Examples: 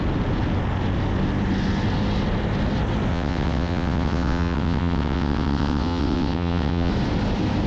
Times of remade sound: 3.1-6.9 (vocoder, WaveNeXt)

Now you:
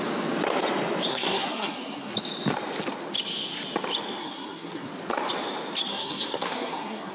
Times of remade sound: 1.1-2.1 (codec, SNAC); 4.2-4.9; 5.9-7.1

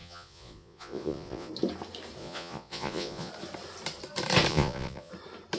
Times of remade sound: 0.0-1.5 (vocoder, Vocos); 2.2-3.3; 4.5-5.1

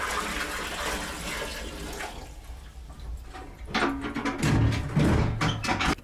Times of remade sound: none

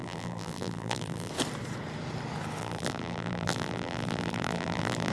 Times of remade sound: 0.0-1.3 (vocoder, BigVGAN v2); 2.6-5.1

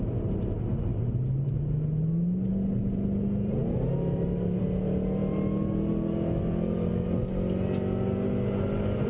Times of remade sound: none

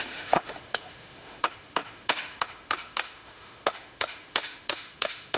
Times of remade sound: 0.0-5.4 (autoencoder, DAC-VAE)